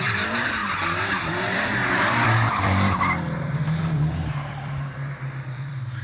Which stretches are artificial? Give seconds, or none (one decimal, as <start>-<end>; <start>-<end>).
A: 0.0-0.6; 1.3-6.0